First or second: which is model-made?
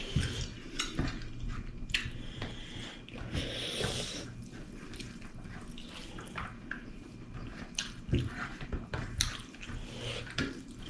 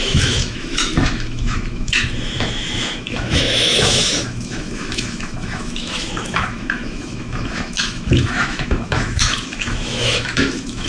second